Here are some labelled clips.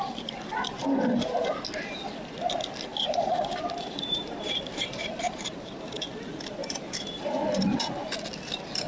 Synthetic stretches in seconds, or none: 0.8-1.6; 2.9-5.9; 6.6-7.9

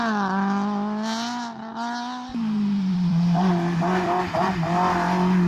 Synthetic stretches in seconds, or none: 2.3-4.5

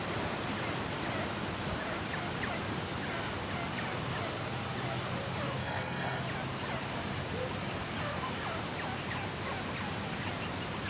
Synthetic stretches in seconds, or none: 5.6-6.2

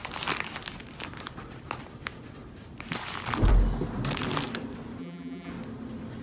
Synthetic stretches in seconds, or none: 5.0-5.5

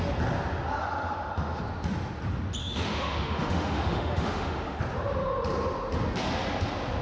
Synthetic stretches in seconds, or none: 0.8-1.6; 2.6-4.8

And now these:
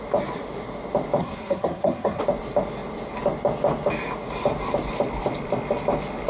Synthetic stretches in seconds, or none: 1.2-2.2